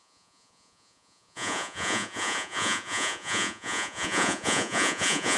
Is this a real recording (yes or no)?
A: no